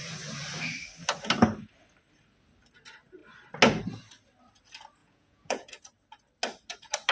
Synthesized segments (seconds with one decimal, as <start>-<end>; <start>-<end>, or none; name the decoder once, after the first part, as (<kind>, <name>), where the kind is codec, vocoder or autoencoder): 5.0-5.7 (vocoder, Vocos)